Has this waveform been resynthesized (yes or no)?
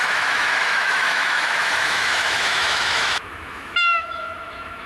yes